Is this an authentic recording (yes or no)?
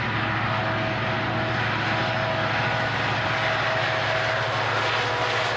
yes